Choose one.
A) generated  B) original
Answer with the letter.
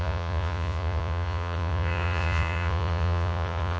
A